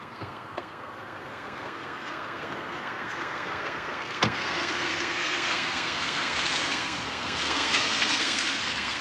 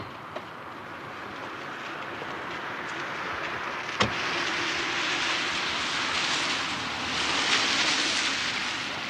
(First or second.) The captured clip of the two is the second